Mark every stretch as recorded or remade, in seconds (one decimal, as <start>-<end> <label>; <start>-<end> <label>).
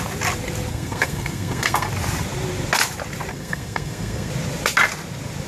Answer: 0.0-0.7 recorded; 0.7-1.9 remade; 1.9-3.3 recorded; 3.3-4.3 remade; 4.3-5.5 recorded